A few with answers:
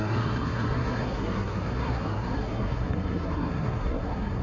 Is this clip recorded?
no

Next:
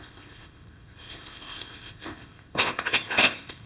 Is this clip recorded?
no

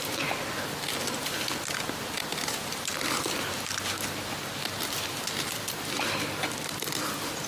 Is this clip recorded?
yes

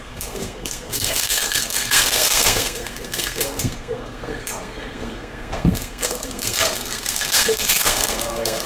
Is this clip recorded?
no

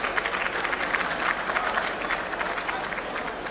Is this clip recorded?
yes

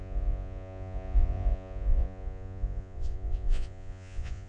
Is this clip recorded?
no